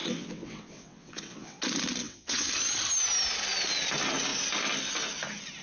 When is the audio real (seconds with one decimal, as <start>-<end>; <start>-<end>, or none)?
1.6-2.0; 2.5-5.6